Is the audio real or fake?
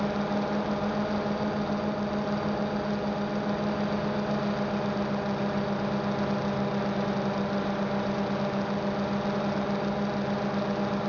real